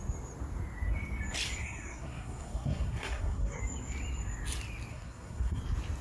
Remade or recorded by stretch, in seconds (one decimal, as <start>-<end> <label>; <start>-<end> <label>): 0.0-1.6 recorded; 1.6-3.6 remade; 3.6-4.9 recorded; 4.9-5.6 remade; 5.6-6.0 recorded